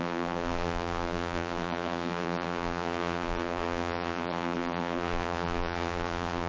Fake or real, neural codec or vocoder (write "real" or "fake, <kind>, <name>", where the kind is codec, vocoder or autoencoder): fake, vocoder, BigVGAN v2